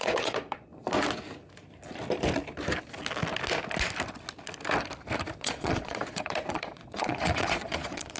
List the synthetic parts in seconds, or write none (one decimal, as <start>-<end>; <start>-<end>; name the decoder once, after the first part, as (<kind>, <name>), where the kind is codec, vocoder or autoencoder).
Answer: 0.0-0.7 (vocoder, Vocos); 5.4-8.2